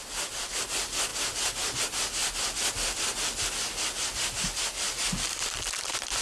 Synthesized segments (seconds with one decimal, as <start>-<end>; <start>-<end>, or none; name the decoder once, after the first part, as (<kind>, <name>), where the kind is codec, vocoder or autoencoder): none